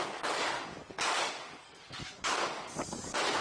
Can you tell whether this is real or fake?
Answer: fake